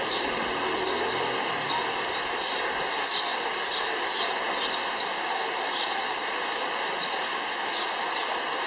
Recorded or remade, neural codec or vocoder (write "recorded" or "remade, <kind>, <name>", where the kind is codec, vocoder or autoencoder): recorded